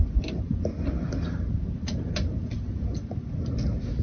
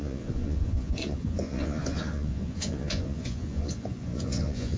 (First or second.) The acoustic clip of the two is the first